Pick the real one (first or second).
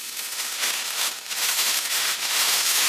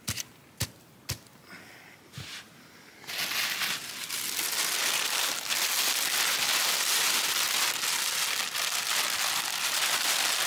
second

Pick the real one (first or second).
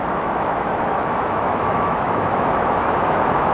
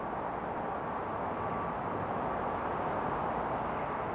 second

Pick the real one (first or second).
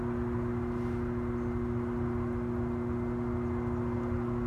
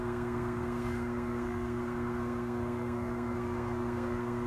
first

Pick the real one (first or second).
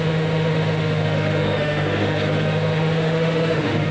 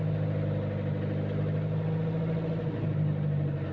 second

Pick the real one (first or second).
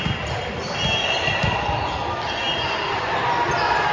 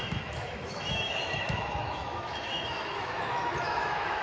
first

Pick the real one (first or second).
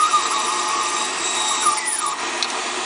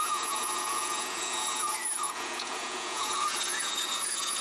first